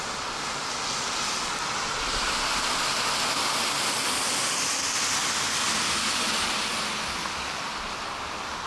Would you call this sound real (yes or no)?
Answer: yes